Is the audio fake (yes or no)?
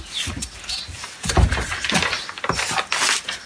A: no